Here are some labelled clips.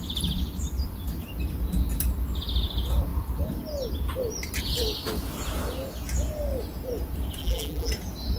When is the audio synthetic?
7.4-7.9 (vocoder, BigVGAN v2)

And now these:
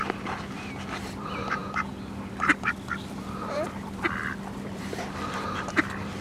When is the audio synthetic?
0.0-1.6 (vocoder, BigVGAN v2); 3.2-6.2